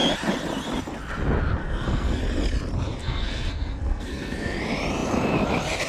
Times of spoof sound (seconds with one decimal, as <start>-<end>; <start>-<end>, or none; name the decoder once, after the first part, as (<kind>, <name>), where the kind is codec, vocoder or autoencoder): 1.6-2.2 (codec, SNAC); 3.0-4.6